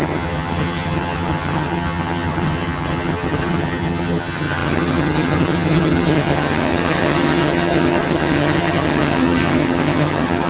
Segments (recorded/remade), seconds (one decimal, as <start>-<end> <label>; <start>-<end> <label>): 0.0-10.5 remade